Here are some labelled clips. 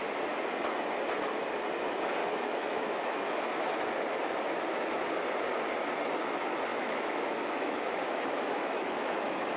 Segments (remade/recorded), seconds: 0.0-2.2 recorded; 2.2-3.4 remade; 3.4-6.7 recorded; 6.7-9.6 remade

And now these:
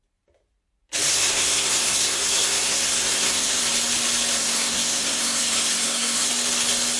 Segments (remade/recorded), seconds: 0.0-1.1 recorded; 1.1-3.6 remade; 3.6-4.4 recorded; 4.4-6.3 remade; 6.3-7.0 recorded

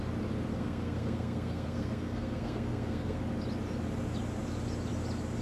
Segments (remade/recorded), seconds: 0.0-0.5 recorded; 0.5-3.2 remade; 3.2-5.4 recorded